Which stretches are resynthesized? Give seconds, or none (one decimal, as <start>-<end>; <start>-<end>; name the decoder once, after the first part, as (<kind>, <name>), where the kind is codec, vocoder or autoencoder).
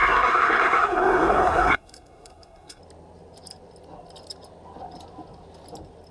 0.0-2.8 (codec, SNAC)